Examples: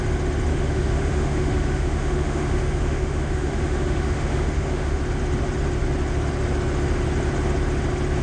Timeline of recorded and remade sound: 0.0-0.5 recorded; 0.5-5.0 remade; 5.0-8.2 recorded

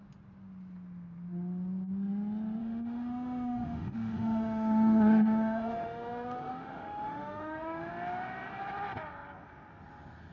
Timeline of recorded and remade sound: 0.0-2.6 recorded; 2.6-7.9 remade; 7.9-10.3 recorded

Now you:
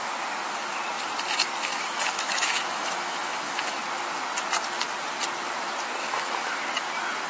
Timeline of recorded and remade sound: 0.0-1.6 recorded; 1.6-3.8 remade; 3.8-6.0 recorded; 6.0-6.5 remade; 6.5-7.3 recorded

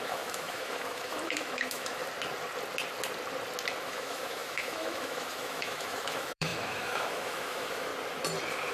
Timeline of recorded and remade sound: 0.0-2.0 remade; 2.0-3.8 recorded; 3.8-7.9 remade; 7.9-8.7 recorded

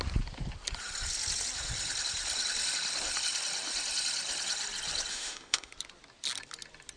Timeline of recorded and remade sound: 0.0-5.1 recorded; 5.1-5.7 remade; 5.7-7.0 recorded

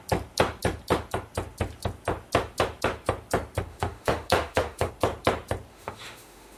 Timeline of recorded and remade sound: 0.0-3.7 recorded; 3.7-4.9 remade; 4.9-5.7 recorded; 5.7-6.6 remade

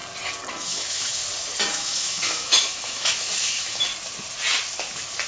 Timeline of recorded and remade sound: 0.0-0.5 recorded; 0.5-1.2 remade; 1.2-1.7 recorded; 1.7-3.9 remade; 3.9-5.3 recorded

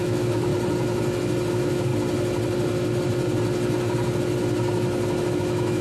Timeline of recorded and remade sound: 0.0-0.5 remade; 0.5-1.5 recorded; 1.5-1.9 remade; 1.9-5.3 recorded; 5.3-5.8 remade